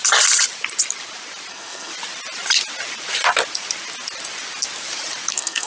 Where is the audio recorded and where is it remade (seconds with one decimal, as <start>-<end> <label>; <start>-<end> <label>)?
0.0-1.5 recorded; 1.5-1.9 remade; 1.9-5.3 recorded; 5.3-5.7 remade